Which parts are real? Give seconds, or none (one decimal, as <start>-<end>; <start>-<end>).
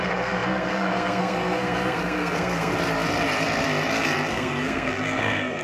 2.7-4.3